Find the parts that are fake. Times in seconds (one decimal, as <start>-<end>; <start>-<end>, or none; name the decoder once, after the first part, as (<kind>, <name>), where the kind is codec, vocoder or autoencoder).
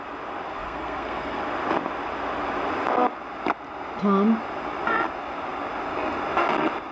0.5-1.4 (codec, SNAC)